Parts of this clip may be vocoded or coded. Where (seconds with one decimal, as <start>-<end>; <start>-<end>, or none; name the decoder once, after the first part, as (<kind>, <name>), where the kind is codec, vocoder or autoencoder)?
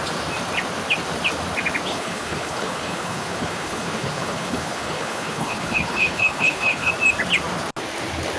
1.9-6.9 (codec, HILCodec)